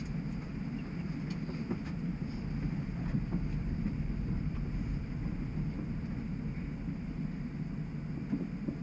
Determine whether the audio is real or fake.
real